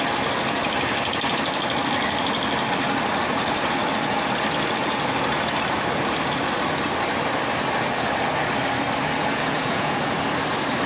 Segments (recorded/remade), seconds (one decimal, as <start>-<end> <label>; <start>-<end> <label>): 0.0-9.3 recorded; 9.3-10.1 remade; 10.1-10.9 recorded